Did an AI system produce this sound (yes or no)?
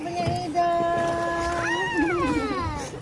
no